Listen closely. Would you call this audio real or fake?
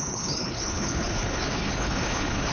fake